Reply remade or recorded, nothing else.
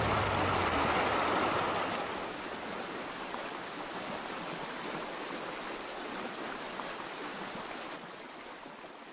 recorded